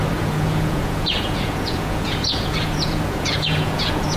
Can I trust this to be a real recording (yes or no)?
no